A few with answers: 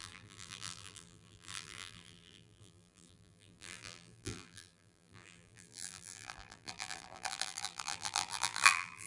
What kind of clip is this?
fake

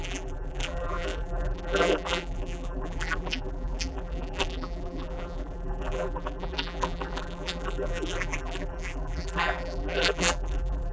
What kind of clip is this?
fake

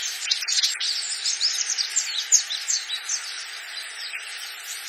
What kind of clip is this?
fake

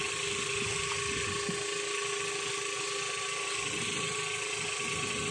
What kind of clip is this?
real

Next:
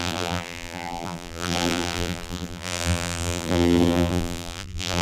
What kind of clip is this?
fake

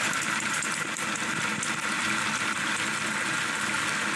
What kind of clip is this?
real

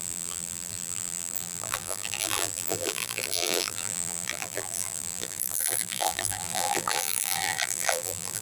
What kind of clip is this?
fake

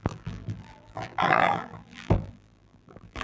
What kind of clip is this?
fake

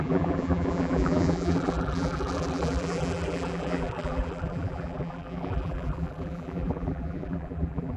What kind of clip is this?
fake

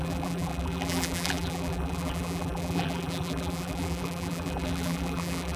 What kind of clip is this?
fake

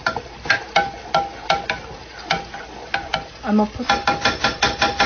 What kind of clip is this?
real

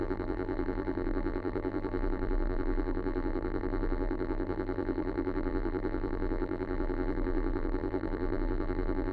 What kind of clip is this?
fake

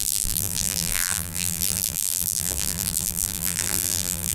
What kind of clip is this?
fake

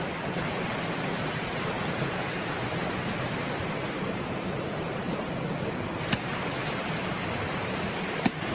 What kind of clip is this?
fake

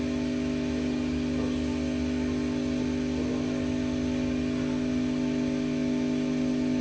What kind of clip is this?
real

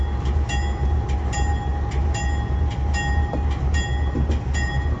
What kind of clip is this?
real